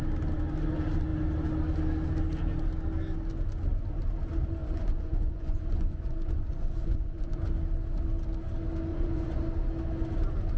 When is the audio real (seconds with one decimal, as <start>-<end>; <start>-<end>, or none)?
0.0-4.6; 7.4-8.9; 9.4-10.6